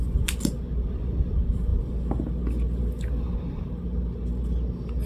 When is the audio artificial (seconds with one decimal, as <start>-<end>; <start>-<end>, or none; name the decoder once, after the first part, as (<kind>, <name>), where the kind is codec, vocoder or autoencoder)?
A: none

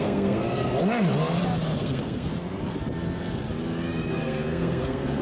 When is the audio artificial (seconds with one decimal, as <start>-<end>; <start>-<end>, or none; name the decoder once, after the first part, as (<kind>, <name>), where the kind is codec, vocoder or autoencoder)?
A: 0.0-0.4 (codec, SNAC); 1.8-2.3; 4.1-5.2

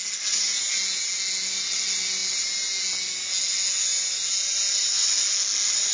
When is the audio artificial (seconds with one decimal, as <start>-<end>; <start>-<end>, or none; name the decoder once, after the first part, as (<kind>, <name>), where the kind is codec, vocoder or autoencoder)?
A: none

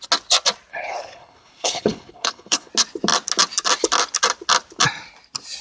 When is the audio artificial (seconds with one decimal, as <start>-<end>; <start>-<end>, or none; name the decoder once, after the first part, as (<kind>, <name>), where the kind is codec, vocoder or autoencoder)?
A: 0.7-2.7 (codec, HILCodec)